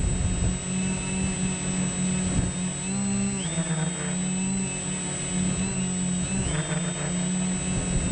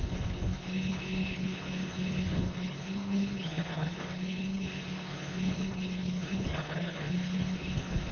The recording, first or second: first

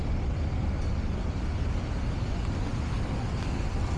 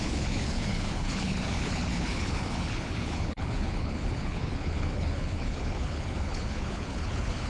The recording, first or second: first